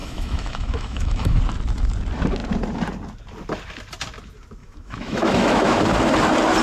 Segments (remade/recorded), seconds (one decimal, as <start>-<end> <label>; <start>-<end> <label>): 0.0-1.4 remade; 1.4-4.6 recorded; 4.6-5.8 remade; 5.8-6.6 recorded